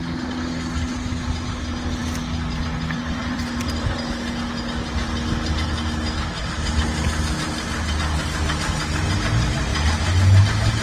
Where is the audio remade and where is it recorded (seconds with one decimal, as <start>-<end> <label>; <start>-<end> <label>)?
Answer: 0.0-10.8 recorded